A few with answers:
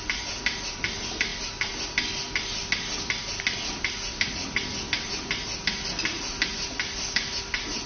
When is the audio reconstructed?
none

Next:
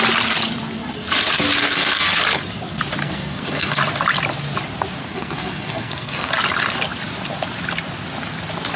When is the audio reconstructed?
1.6-2.2; 3.0-3.8; 5.0-6.3

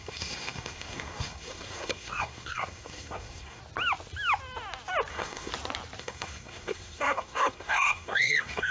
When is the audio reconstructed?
0.0-3.6; 5.1-5.5; 6.0-8.7

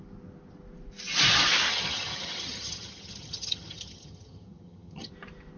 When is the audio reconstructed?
1.7-5.1

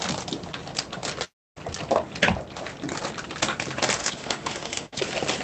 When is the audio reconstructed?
4.0-5.0

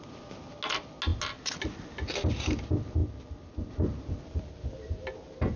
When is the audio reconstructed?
none

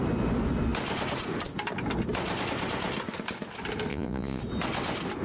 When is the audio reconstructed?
3.9-4.4